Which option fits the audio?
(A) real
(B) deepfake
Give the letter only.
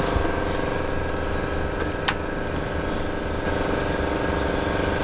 A